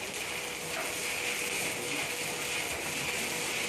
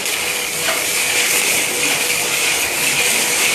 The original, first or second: first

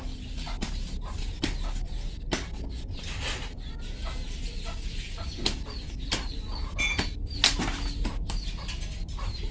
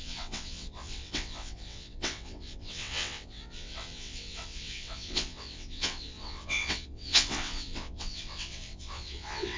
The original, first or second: first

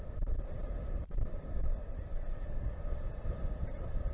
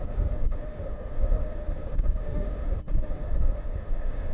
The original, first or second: first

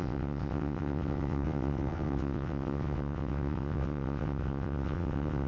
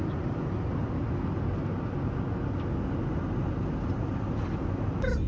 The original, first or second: second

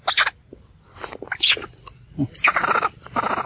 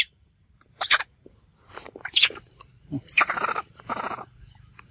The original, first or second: first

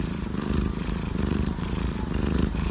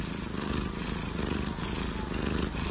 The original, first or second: second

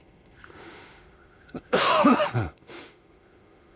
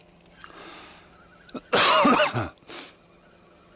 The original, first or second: second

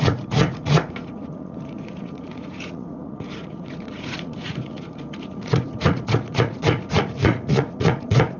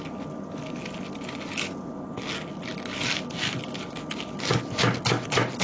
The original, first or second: second